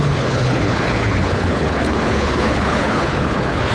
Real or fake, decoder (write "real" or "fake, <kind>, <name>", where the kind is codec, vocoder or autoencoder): fake, codec, HILCodec